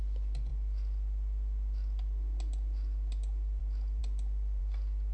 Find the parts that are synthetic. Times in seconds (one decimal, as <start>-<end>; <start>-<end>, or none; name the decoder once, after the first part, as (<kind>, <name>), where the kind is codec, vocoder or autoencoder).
4.0-4.6 (vocoder, BigVGAN v2)

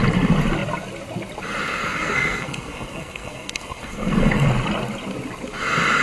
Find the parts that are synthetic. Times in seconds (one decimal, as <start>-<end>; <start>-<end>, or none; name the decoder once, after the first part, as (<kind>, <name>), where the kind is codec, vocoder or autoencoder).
1.8-4.5 (codec, SNAC)

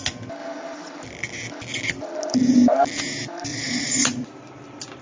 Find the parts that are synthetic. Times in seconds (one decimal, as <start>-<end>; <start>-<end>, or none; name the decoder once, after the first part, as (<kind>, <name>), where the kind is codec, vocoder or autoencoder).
3.5-4.3 (vocoder, Vocos)